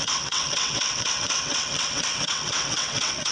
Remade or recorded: remade